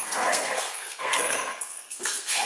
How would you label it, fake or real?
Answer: fake